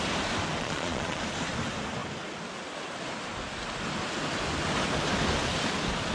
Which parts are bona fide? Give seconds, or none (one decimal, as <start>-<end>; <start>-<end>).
0.0-0.6; 1.2-6.1